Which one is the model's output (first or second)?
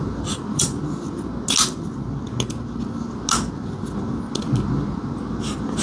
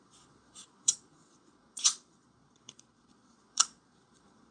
second